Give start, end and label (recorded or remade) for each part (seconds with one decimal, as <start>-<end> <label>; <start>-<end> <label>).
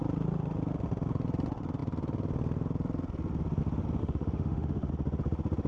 0.0-4.0 recorded; 4.0-4.9 remade; 4.9-5.7 recorded